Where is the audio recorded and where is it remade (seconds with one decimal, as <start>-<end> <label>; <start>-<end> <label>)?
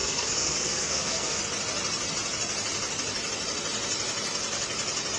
0.0-1.4 remade; 1.4-5.2 recorded